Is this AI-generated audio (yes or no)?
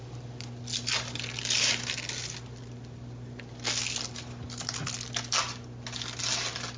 no